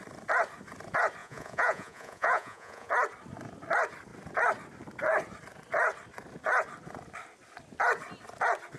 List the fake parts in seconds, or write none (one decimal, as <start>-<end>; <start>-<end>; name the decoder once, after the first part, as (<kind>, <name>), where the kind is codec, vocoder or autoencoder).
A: 1.2-2.9 (vocoder, Vocos)